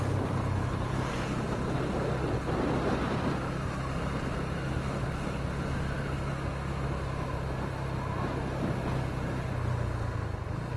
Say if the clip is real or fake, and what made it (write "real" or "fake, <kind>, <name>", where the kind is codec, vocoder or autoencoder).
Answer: real